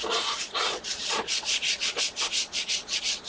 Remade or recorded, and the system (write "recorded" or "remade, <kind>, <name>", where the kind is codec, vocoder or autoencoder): remade, vocoder, Vocos